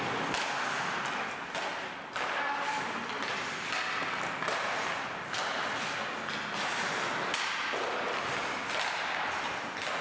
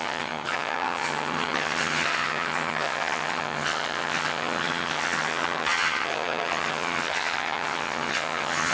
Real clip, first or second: first